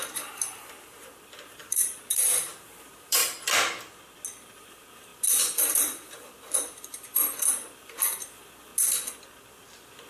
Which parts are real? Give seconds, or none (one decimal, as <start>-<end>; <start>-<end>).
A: 3.2-4.6; 8.7-10.1